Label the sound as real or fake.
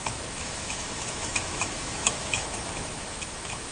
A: fake